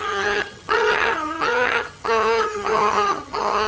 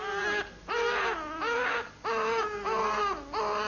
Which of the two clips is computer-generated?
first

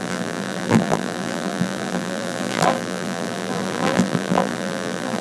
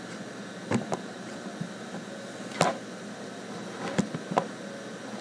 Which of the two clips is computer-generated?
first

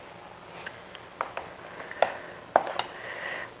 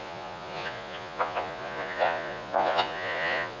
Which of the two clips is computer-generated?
second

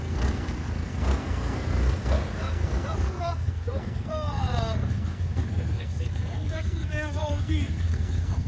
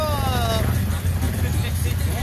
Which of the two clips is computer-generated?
first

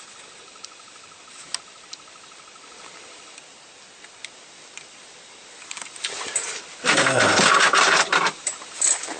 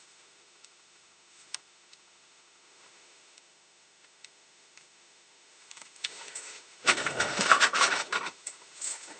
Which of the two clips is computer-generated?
second